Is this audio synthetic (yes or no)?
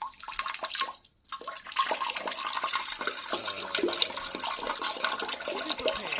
no